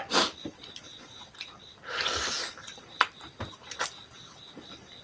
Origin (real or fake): real